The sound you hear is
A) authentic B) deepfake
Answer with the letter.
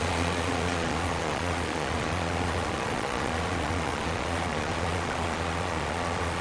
B